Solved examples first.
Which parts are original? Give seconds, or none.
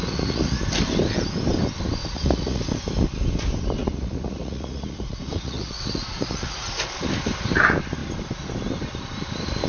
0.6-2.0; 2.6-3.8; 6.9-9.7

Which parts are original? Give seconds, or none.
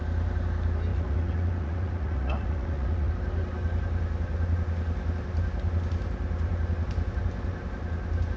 0.0-0.9; 3.1-8.4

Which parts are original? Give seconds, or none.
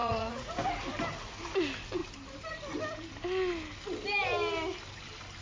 0.5-5.4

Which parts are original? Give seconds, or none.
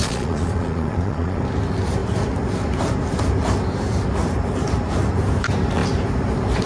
1.4-6.7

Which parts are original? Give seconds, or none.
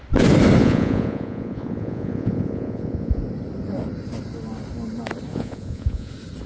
0.0-0.6; 3.2-5.3; 6.1-6.5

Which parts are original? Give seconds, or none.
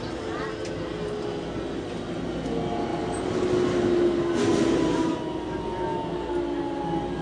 0.0-7.2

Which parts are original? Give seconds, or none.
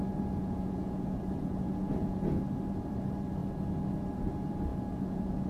0.0-0.4; 2.4-4.7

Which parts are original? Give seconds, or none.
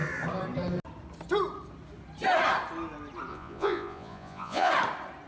0.0-3.3; 4.7-5.3